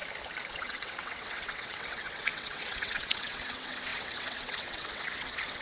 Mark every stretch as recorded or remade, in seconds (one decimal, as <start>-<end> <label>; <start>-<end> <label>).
0.0-0.5 recorded; 0.5-5.6 remade